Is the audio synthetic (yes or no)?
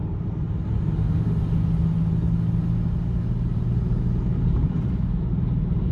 no